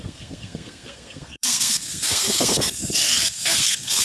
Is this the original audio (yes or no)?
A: no